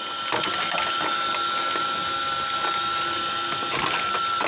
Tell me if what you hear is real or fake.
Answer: real